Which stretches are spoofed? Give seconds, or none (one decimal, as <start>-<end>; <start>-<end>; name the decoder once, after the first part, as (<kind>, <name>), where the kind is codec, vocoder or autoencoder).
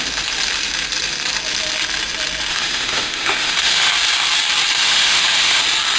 2.5-3.9 (autoencoder, DAC-VAE); 4.8-5.6